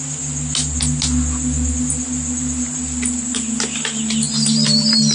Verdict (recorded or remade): recorded